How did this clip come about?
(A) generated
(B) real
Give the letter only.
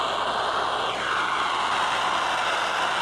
B